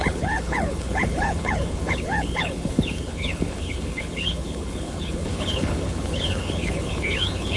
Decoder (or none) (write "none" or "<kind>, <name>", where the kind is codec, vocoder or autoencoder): codec, HILCodec